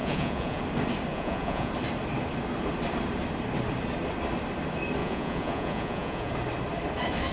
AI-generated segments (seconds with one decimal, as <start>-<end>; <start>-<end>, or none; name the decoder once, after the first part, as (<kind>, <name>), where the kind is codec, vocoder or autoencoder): 0.0-0.6 (vocoder, Vocos); 1.1-1.7; 5.0-6.3